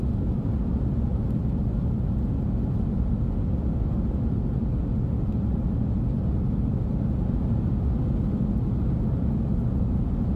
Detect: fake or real real